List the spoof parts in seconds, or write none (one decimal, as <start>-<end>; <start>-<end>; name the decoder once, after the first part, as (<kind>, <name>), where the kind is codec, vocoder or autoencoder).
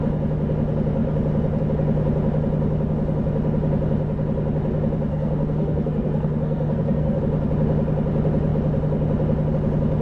5.1-7.2 (codec, SNAC)